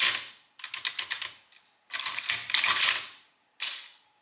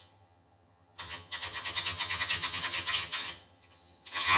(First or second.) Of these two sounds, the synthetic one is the second